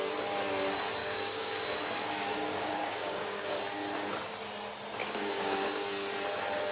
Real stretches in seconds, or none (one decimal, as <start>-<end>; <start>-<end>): 0.0-1.0; 3.6-5.0; 5.7-6.7

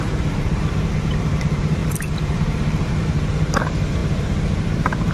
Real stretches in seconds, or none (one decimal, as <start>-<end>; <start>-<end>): none

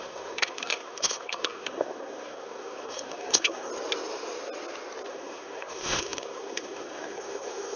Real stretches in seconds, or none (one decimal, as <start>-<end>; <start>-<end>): 3.7-5.1

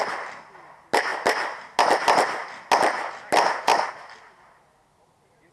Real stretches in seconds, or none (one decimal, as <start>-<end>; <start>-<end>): 0.0-1.1; 1.7-5.5

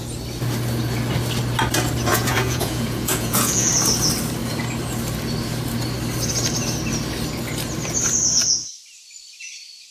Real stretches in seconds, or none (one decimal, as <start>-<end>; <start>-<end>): 0.0-2.1; 3.7-9.9